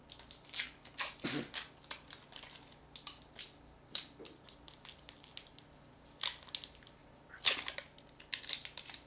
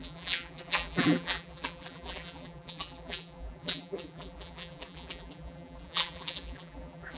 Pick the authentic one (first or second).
first